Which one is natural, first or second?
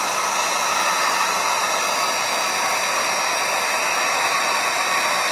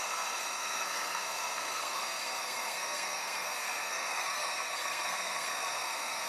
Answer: first